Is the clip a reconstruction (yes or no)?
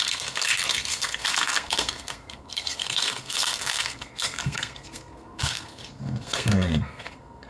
yes